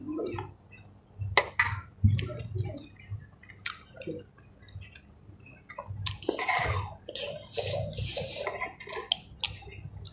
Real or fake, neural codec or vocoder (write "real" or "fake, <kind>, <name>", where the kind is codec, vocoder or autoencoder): real